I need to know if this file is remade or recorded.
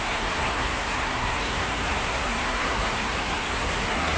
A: remade